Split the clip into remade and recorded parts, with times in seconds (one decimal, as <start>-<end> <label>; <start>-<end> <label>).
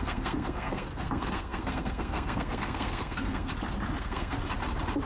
0.0-3.5 remade; 3.5-4.0 recorded; 4.0-4.4 remade; 4.4-5.1 recorded